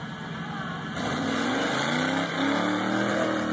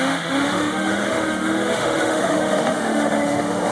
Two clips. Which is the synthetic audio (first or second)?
second